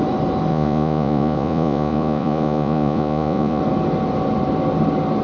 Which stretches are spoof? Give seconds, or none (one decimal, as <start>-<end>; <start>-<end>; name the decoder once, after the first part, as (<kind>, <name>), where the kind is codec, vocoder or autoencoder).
0.5-3.6 (vocoder, Vocos)